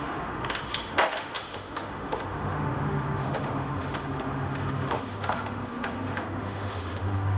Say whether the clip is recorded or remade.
remade